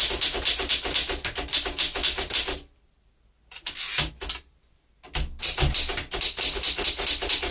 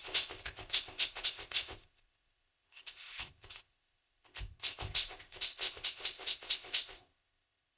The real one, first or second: first